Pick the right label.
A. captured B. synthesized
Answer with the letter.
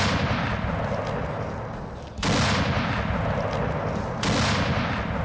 A